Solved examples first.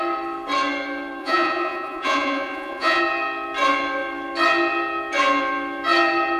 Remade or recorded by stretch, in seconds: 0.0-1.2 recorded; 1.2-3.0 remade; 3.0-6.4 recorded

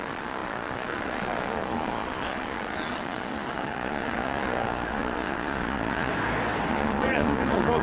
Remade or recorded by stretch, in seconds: 0.0-6.1 remade; 6.1-6.7 recorded; 6.7-7.8 remade

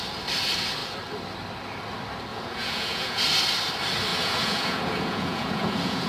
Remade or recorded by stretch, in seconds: 0.0-2.3 recorded; 2.3-3.2 remade; 3.2-4.1 recorded; 4.1-6.1 remade

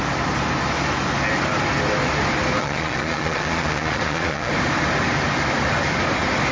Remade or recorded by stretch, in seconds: 0.0-2.6 recorded; 2.6-4.5 remade; 4.5-6.5 recorded

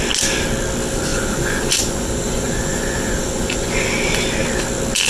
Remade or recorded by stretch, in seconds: 0.0-1.1 recorded; 1.1-3.9 remade; 3.9-5.1 recorded

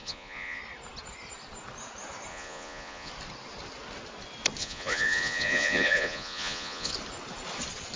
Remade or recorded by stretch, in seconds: 0.0-0.6 remade; 0.6-2.3 recorded; 2.3-3.1 remade; 3.1-4.6 recorded; 4.6-6.9 remade; 6.9-8.0 recorded

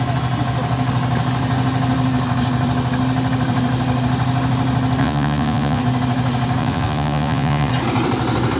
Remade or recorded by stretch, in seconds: 0.0-5.0 recorded; 5.0-5.8 remade; 5.8-6.6 recorded; 6.6-7.7 remade; 7.7-8.6 recorded

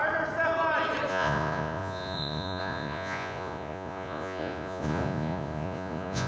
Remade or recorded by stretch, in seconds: 0.0-1.1 recorded; 1.1-6.3 remade